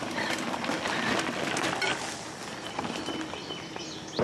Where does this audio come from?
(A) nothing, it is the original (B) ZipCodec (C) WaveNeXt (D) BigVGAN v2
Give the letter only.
A